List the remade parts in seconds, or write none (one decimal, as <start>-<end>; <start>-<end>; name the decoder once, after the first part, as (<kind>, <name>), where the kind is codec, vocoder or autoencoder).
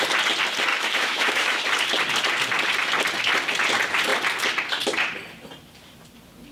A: 0.7-1.6 (autoencoder, DAC-VAE)